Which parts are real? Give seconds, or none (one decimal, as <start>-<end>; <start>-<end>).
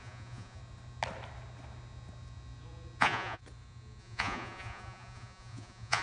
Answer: 0.6-3.0; 3.4-4.0